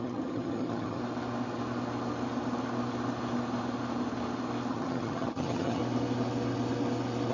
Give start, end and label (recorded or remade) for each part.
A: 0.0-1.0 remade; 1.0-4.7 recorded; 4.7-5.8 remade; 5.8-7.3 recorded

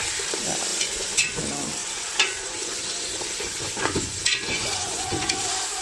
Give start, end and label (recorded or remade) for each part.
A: 0.0-0.7 recorded; 0.7-1.4 remade; 1.4-1.8 recorded; 1.8-5.3 remade; 5.3-5.8 recorded

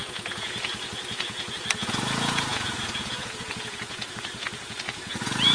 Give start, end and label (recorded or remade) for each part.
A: 0.0-5.5 remade

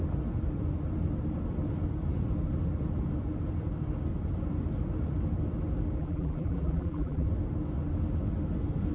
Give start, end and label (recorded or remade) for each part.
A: 0.0-6.0 recorded; 6.0-7.3 remade; 7.3-8.9 recorded

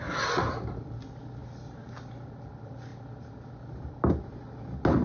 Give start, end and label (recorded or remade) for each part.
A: 0.0-5.0 recorded

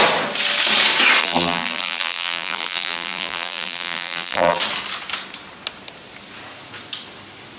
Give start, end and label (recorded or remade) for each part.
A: 0.0-1.2 recorded; 1.2-4.6 remade; 4.6-7.6 recorded